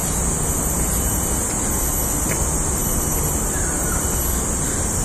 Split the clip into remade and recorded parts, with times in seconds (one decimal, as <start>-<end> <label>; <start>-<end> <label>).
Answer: 0.0-5.0 recorded

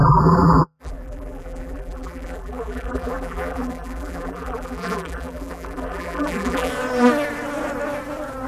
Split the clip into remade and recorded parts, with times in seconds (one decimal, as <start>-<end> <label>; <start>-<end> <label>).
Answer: 0.0-6.7 remade; 6.7-8.5 recorded

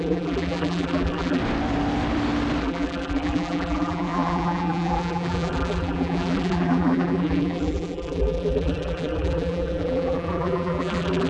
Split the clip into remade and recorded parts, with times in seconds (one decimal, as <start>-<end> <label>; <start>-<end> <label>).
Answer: 0.0-1.4 remade; 1.4-2.6 recorded; 2.6-11.3 remade

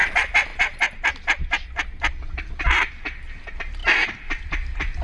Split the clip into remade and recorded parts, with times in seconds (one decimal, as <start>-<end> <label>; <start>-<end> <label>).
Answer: 0.0-5.0 recorded

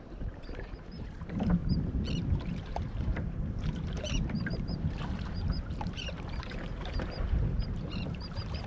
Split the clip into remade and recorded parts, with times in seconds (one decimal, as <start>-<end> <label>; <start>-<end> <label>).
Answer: 0.0-1.6 remade; 1.6-2.2 recorded; 2.2-8.7 remade